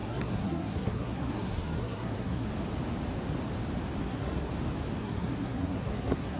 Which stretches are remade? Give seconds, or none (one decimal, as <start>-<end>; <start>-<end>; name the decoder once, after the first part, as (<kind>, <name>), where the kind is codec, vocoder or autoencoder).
0.0-2.5 (codec, SNAC); 4.0-4.5; 5.0-6.4